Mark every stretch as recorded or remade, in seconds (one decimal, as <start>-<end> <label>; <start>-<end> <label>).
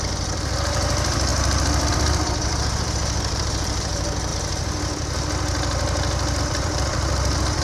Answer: 0.0-4.3 remade; 4.3-6.4 recorded; 6.4-7.6 remade